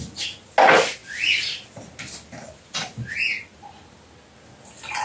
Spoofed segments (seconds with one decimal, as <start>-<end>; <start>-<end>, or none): 1.0-2.3